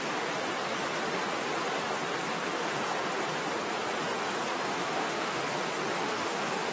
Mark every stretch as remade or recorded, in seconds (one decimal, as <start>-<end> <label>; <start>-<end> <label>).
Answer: 0.0-2.3 recorded; 2.3-2.8 remade; 2.8-4.7 recorded; 4.7-5.4 remade; 5.4-6.0 recorded; 6.0-6.7 remade